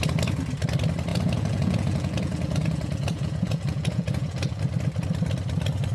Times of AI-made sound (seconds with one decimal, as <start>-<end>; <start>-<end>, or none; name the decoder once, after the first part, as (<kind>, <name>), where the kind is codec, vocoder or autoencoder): 1.1-4.6 (vocoder, Vocos)